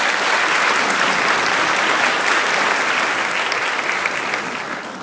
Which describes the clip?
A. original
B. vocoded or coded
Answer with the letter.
A